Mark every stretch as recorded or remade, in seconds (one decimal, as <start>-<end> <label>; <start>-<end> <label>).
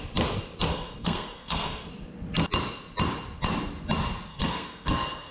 0.0-0.7 recorded; 0.7-1.9 remade; 1.9-4.3 recorded; 4.3-5.3 remade